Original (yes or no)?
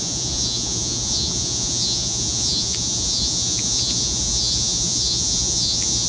no